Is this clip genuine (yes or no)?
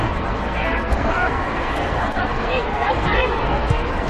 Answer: no